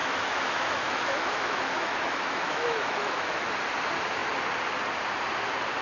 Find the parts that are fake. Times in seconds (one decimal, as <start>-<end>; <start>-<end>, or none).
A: 0.0-3.5